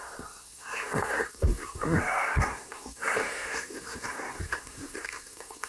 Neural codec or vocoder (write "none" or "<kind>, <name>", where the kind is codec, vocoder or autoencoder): codec, SNAC